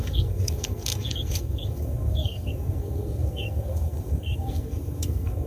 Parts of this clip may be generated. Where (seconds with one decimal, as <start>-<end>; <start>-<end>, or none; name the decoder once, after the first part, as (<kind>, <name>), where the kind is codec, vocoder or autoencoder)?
0.0-5.5 (codec, SNAC)